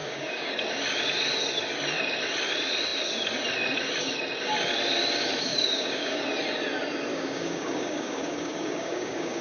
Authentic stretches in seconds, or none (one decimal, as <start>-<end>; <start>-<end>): 0.5-5.5; 6.2-7.1